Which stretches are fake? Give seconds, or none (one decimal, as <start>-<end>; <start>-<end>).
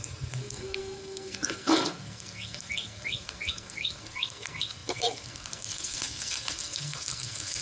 0.0-7.6